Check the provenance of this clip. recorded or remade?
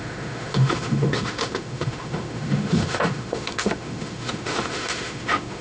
remade